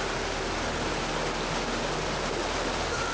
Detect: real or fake real